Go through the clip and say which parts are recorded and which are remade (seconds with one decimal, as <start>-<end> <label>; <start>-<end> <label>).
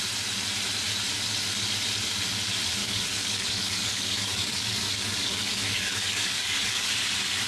0.0-2.8 recorded; 2.8-6.9 remade; 6.9-7.5 recorded